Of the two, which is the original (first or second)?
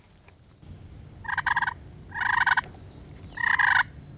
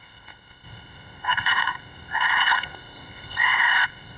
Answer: first